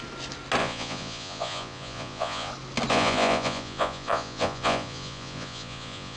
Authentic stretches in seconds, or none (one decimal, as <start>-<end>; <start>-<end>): 0.0-0.6; 2.5-2.9